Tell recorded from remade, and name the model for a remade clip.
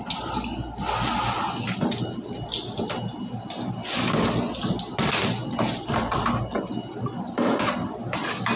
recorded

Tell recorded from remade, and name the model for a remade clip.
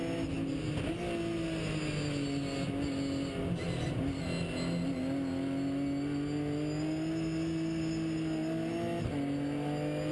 recorded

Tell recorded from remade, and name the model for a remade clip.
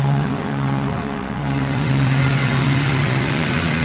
remade, vocoder, WaveNeXt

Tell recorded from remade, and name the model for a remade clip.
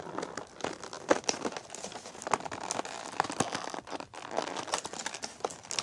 recorded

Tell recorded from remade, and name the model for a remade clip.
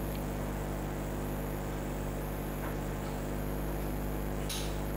recorded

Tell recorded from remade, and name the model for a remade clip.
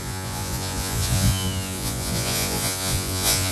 remade, vocoder, Vocos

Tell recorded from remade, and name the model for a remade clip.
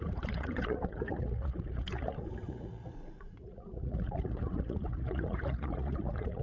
remade, vocoder, Vocos